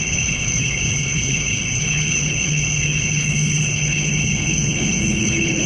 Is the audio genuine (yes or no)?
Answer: no